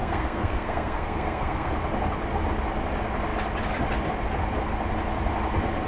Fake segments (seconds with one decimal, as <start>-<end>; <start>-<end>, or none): 0.0-1.7

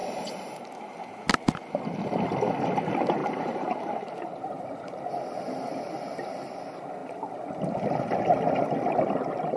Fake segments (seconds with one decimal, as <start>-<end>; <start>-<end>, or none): 0.0-0.8; 3.2-5.0